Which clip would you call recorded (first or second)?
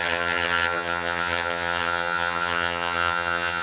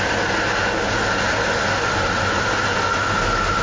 second